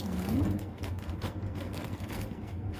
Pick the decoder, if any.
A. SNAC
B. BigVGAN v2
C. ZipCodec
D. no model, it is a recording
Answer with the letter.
A